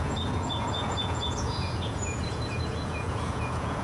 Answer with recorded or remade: remade